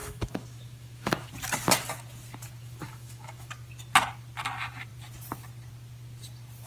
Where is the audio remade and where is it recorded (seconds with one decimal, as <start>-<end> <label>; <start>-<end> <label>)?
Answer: 0.0-1.3 remade; 1.3-2.6 recorded; 2.6-3.5 remade; 3.5-6.7 recorded